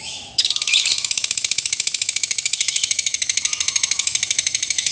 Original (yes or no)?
no